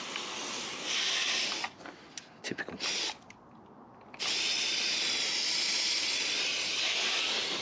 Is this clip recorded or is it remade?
recorded